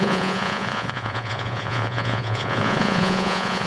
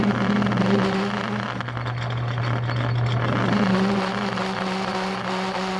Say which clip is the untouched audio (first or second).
second